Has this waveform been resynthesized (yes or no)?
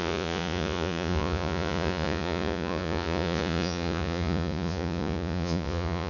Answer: yes